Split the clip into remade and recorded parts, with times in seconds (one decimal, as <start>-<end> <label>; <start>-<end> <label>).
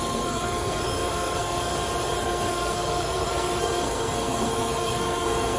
0.0-1.7 remade; 1.7-2.2 recorded; 2.2-5.6 remade